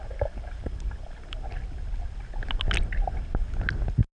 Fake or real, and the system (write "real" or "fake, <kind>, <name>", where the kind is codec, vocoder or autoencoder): real